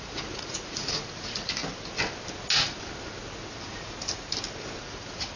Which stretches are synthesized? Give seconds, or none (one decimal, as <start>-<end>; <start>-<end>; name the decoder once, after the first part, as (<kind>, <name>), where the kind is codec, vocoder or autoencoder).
0.0-1.6 (vocoder, Vocos); 4.8-5.4